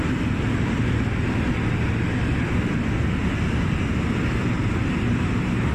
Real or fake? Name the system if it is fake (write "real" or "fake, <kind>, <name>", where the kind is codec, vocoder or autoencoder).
real